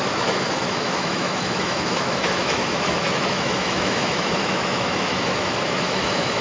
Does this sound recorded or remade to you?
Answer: remade